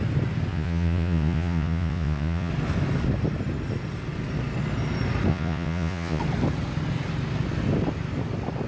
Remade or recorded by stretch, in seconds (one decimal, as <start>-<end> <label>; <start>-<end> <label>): 0.0-0.5 recorded; 0.5-2.5 remade; 2.5-5.3 recorded; 5.3-6.2 remade; 6.2-8.7 recorded